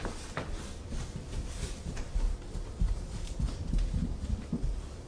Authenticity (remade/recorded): recorded